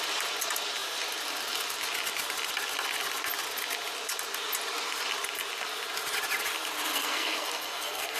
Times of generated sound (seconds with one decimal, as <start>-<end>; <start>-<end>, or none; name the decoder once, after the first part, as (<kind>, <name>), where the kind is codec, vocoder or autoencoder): 6.9-8.2 (codec, SNAC)